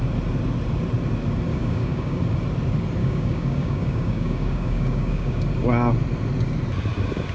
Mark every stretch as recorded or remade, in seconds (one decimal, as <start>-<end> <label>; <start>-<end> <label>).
0.0-1.5 recorded; 1.5-2.2 remade; 2.2-3.0 recorded; 3.0-5.4 remade; 5.4-7.3 recorded